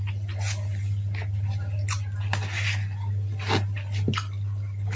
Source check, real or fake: real